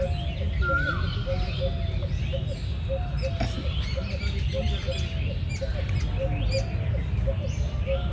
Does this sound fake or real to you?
real